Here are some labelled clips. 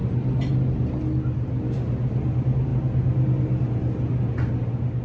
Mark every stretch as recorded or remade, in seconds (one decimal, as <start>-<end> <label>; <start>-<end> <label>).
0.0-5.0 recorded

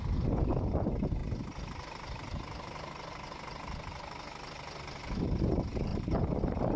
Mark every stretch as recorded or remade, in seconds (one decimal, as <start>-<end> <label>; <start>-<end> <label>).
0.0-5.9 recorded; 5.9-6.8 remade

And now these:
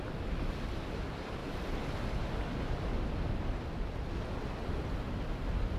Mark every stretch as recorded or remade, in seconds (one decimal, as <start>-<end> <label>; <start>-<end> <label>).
0.0-5.8 recorded

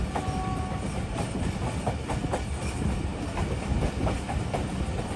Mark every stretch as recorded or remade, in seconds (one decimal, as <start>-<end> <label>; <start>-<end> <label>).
0.0-5.2 recorded